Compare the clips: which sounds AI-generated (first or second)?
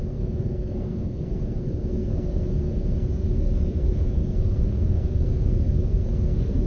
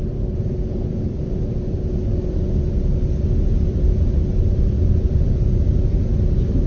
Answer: first